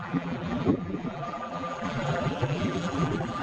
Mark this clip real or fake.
fake